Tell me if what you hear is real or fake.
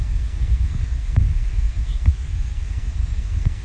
fake